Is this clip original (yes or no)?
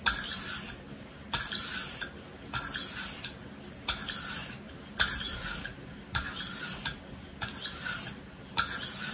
yes